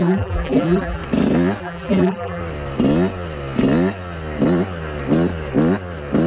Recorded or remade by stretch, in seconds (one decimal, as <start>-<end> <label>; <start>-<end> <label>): 0.0-1.0 remade; 1.0-1.6 recorded; 1.6-2.4 remade; 2.4-6.3 recorded